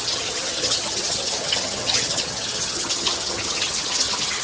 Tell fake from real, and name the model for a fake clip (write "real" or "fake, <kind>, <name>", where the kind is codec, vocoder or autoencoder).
fake, vocoder, HiFi-GAN